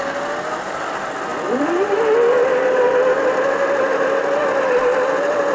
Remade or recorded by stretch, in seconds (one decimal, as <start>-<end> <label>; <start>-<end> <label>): 0.0-5.5 recorded